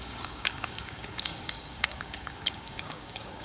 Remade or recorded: remade